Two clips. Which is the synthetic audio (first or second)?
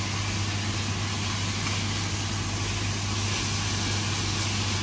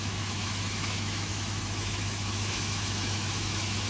second